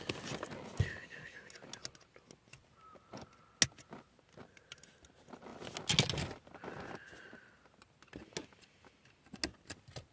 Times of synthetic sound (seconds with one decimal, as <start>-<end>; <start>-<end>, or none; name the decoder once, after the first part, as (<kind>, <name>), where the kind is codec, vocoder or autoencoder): none